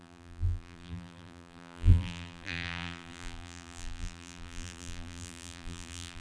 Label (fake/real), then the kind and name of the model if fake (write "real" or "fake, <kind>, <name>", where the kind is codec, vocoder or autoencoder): fake, vocoder, BigVGAN v2